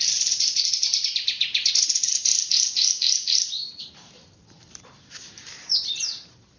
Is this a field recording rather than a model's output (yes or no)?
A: no